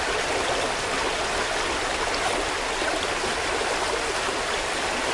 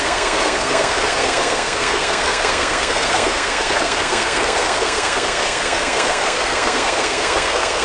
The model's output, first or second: second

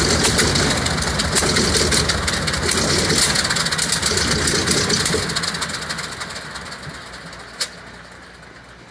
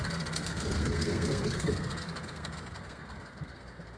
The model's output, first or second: second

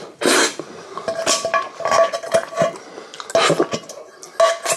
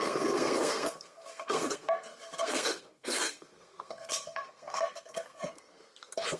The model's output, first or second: second